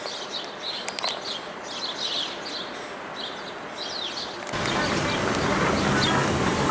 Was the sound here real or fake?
real